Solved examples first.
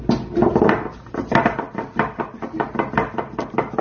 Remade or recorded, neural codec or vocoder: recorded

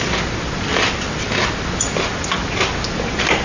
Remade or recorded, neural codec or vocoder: recorded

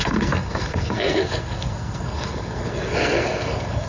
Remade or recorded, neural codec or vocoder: remade, codec, SNAC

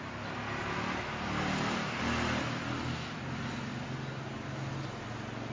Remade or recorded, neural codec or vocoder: recorded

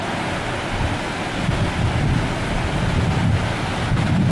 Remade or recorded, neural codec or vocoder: recorded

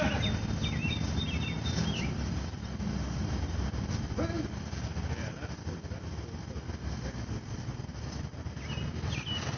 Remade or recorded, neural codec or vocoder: recorded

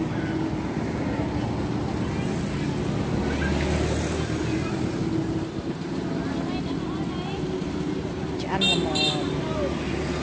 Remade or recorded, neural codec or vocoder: recorded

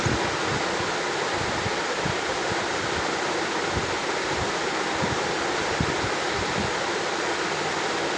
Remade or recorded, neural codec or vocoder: recorded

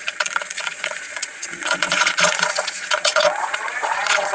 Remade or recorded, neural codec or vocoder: remade, vocoder, Vocos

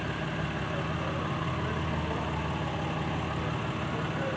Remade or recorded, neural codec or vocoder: recorded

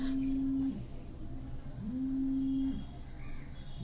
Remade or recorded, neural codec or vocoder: recorded